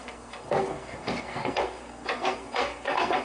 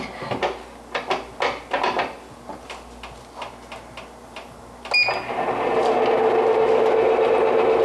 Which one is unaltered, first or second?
second